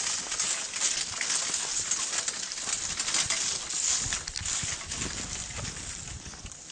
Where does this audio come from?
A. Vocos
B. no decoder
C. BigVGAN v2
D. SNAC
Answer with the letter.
B